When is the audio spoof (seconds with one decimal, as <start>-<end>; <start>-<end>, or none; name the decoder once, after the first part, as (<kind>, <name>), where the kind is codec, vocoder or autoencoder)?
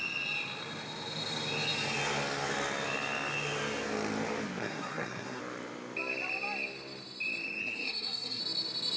4.6-5.4 (codec, SNAC); 7.6-8.4